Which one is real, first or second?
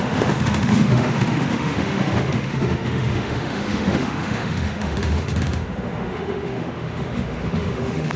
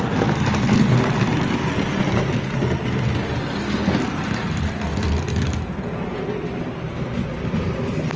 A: second